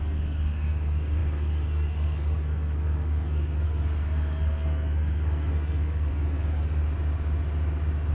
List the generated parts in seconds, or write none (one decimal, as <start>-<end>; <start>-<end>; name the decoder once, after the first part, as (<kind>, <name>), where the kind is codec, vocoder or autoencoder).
0.0-6.8 (codec, SNAC)